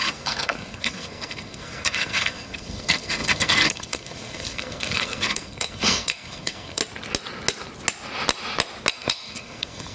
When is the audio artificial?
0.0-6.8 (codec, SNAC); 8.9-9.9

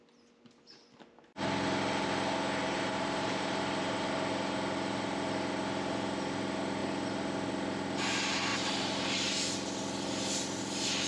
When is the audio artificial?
2.6-4.1 (vocoder, BigVGAN v2); 8.5-9.3

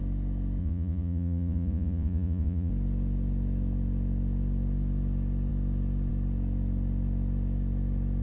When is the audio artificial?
0.6-2.7 (vocoder, Vocos)